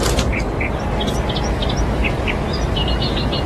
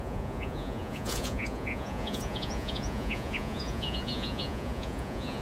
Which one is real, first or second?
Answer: first